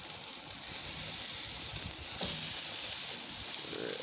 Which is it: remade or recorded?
recorded